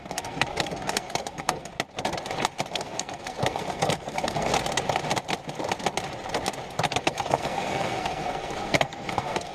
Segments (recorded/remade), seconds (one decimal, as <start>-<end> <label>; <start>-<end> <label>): 0.0-1.7 remade; 1.7-2.7 recorded; 2.7-4.5 remade; 4.5-7.0 recorded; 7.0-9.5 remade